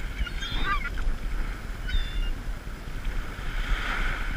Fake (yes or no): no